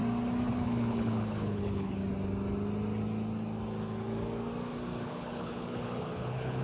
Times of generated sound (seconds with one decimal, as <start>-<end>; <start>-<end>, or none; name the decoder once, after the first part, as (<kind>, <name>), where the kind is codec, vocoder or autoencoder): 0.5-2.0 (codec, HILCodec); 5.0-6.6